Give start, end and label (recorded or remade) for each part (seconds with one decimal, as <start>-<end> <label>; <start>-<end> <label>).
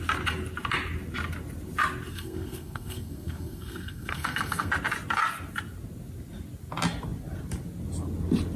0.0-2.1 recorded; 2.1-4.7 remade; 4.7-8.6 recorded